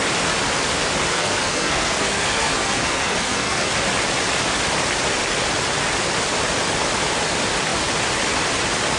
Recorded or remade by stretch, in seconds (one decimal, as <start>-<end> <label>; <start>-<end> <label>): 0.0-1.1 recorded; 1.1-3.7 remade; 3.7-9.0 recorded